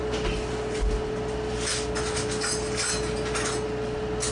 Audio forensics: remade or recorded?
recorded